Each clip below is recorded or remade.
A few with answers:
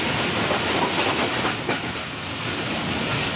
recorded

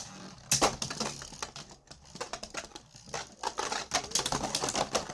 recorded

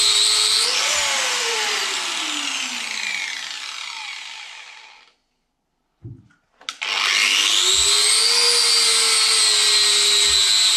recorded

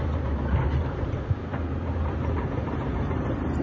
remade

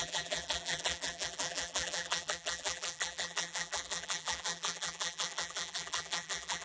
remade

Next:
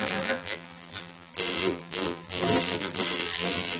remade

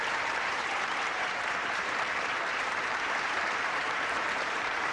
remade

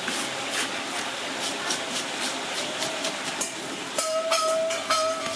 remade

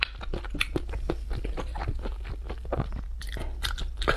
recorded